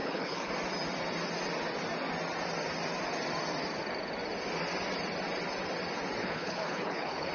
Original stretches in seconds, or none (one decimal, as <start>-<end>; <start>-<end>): 0.5-6.2